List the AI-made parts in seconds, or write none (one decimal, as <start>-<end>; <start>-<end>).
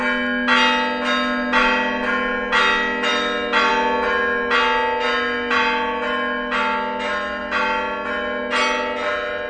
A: none